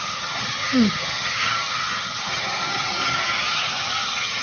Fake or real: fake